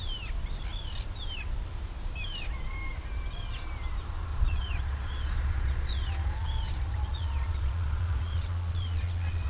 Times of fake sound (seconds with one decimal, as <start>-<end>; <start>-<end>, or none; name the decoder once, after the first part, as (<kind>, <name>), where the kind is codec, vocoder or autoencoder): 4.3-9.5 (vocoder, Vocos)